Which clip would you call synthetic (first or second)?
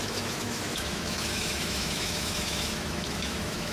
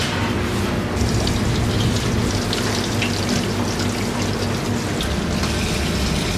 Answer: first